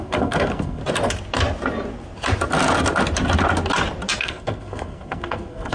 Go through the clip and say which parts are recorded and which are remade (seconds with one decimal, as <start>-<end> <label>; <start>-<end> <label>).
0.0-0.8 remade; 0.8-4.2 recorded; 4.2-5.7 remade